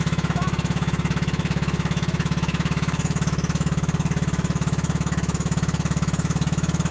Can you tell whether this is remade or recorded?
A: remade